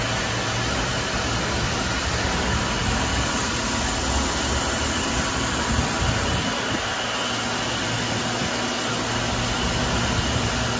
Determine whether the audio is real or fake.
real